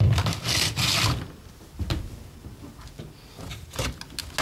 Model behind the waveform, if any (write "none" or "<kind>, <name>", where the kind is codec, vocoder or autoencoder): none